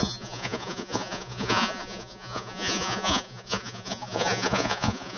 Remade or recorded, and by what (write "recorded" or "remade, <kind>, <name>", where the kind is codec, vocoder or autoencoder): remade, vocoder, Vocos